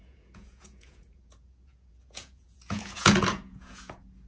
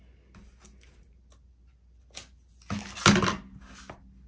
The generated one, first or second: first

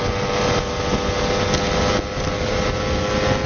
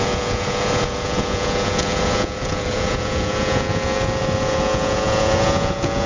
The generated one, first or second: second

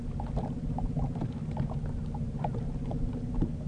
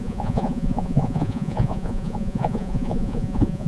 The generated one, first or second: second